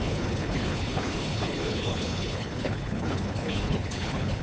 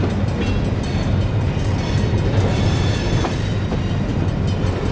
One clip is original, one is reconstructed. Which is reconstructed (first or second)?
first